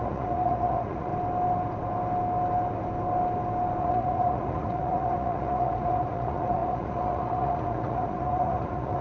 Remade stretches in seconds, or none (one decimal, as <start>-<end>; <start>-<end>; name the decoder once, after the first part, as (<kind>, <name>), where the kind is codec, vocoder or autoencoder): 0.0-1.1 (vocoder, Vocos); 3.8-9.0